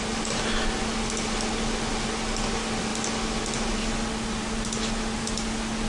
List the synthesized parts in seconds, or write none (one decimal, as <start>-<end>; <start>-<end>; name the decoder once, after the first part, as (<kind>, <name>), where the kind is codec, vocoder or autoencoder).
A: none